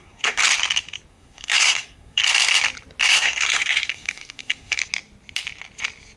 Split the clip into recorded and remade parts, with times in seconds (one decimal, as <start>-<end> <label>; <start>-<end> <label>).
0.0-0.4 remade; 0.4-1.1 recorded; 1.1-2.2 remade; 2.2-3.1 recorded; 3.1-4.8 remade; 4.8-6.2 recorded